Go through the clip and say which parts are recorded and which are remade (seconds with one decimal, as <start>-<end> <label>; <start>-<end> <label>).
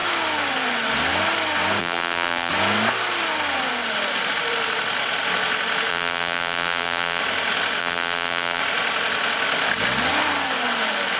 0.0-1.8 recorded; 1.8-2.5 remade; 2.5-5.9 recorded; 5.9-7.2 remade; 7.2-7.8 recorded; 7.8-8.6 remade; 8.6-11.2 recorded